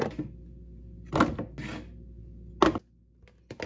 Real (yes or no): yes